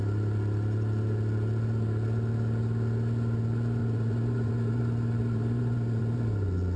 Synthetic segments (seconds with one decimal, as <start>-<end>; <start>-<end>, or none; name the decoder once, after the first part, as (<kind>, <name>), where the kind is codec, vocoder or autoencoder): 3.8-4.8 (vocoder, Vocos); 5.2-6.0